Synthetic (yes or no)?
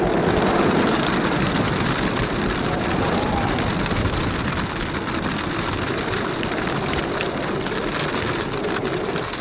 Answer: yes